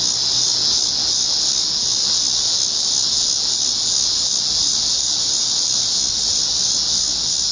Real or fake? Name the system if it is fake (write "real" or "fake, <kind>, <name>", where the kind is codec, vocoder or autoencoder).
real